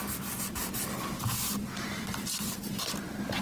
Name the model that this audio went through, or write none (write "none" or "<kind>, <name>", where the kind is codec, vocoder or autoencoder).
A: none